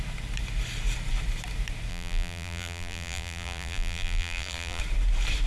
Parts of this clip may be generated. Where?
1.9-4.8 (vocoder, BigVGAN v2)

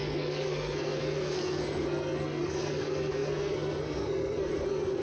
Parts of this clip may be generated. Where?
0.0-5.0 (codec, SNAC)